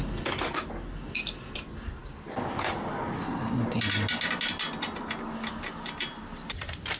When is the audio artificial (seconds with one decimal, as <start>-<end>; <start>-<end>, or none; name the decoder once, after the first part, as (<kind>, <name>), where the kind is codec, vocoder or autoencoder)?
none